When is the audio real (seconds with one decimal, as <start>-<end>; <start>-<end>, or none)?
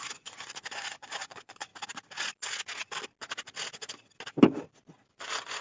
1.7-5.1